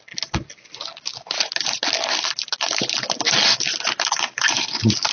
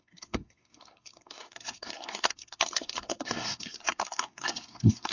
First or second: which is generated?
second